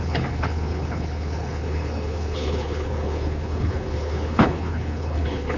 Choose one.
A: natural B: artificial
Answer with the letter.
B